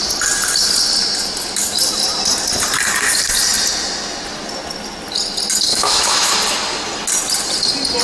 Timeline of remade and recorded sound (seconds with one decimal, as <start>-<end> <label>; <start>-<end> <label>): 0.0-5.7 recorded; 5.7-6.3 remade; 6.3-8.0 recorded